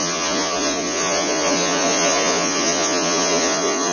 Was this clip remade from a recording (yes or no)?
yes